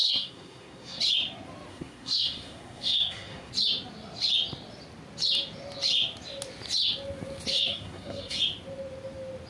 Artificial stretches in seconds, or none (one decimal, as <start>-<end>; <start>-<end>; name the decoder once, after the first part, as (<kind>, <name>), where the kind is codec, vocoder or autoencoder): 0.0-1.0 (codec, SNAC); 1.7-3.5; 7.5-8.4

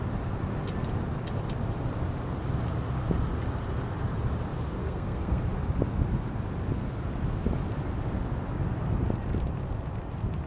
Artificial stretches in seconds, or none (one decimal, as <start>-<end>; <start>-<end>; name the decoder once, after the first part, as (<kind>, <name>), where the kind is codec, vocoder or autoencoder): 4.8-5.4 (codec, SNAC)

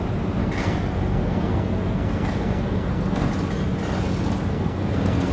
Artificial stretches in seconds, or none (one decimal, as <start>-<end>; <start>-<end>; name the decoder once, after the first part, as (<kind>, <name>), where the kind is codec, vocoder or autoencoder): 0.4-3.3 (codec, SNAC); 4.5-5.3

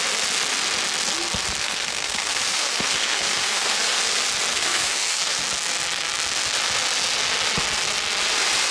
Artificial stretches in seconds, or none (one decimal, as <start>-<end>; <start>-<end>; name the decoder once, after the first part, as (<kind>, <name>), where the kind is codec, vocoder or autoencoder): 1.6-4.0 (codec, SNAC); 4.5-5.4

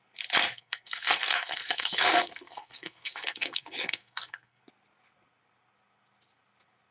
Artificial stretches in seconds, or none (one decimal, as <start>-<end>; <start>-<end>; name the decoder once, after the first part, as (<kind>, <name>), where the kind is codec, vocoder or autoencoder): 0.5-4.6 (codec, SNAC)